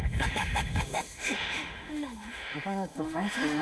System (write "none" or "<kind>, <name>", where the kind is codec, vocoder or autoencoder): autoencoder, DAC-VAE